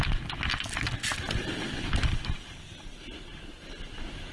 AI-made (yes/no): no